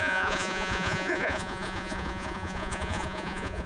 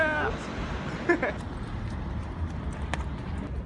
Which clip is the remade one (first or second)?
first